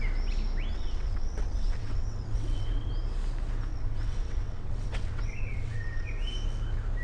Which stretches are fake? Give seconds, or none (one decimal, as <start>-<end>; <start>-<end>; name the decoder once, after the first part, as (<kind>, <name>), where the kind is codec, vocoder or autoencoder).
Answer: 0.7-2.9 (vocoder, WaveNeXt); 3.7-6.1